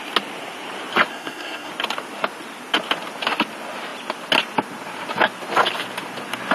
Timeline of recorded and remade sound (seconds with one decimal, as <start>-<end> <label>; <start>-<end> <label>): 0.0-1.1 recorded; 1.1-1.7 remade; 1.7-6.5 recorded